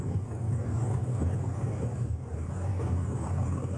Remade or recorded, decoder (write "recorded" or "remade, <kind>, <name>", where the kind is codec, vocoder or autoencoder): remade, codec, DAC